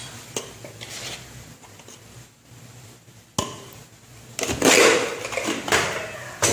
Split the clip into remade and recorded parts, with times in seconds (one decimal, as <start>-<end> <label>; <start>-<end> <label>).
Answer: 0.0-6.5 recorded